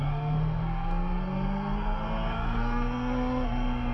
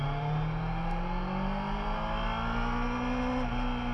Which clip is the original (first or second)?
second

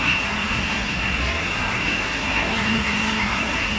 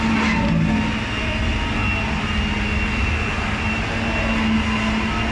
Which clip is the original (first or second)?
second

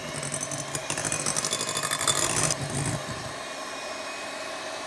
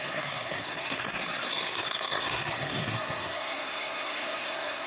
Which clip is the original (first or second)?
first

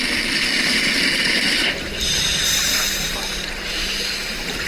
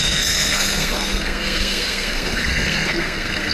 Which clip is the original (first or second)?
first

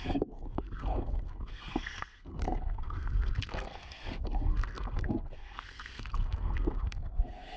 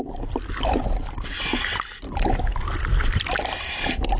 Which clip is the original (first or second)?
second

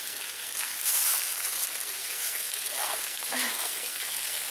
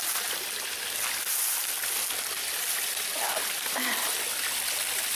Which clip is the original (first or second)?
second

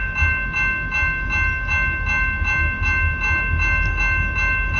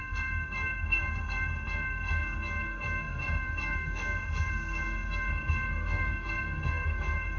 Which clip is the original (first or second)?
first